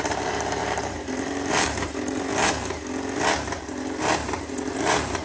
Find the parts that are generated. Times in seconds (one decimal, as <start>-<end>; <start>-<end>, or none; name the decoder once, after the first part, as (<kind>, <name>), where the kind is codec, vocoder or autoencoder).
0.0-2.3 (vocoder, BigVGAN v2); 4.0-5.2